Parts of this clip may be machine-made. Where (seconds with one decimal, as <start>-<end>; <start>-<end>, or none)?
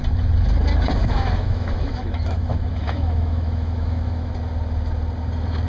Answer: 1.0-4.3